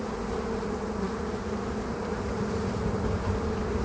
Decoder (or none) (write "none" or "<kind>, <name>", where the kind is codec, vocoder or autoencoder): none